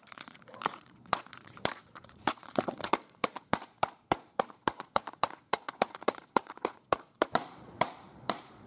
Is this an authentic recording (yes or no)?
no